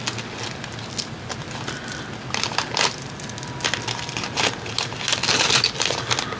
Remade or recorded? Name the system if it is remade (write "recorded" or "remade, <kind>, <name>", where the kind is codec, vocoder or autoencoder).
recorded